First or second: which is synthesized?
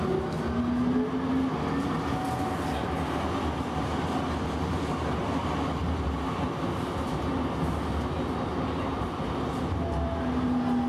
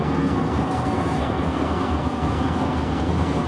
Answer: second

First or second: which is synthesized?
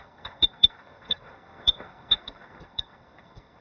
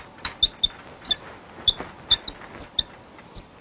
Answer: first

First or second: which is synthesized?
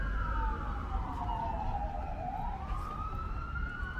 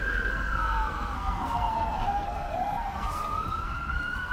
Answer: second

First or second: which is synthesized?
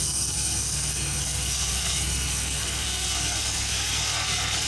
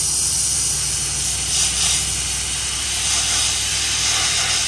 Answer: first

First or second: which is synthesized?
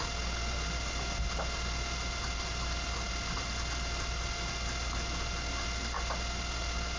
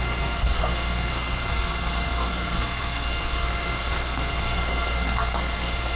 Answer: second